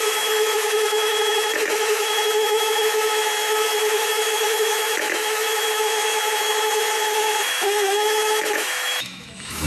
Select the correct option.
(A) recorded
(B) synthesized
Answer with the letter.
B